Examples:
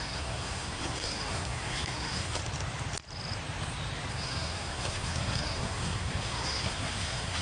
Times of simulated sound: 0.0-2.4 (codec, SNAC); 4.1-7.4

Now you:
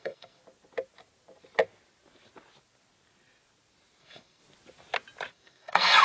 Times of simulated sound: 0.0-0.4 (codec, SNAC); 4.0-4.4; 5.3-6.0

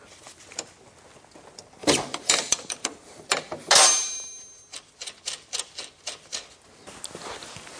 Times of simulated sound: 1.8-3.4 (vocoder, BigVGAN v2)

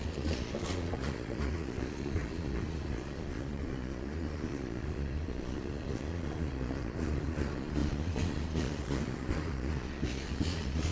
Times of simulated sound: 0.0-10.9 (vocoder, Vocos)